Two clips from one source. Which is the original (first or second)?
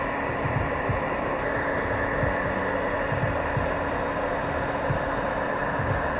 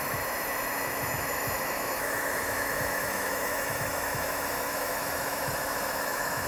first